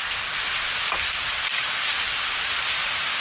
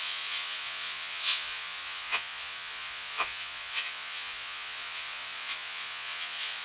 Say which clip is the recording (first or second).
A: first